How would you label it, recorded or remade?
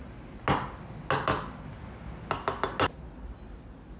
recorded